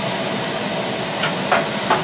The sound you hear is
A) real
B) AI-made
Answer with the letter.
A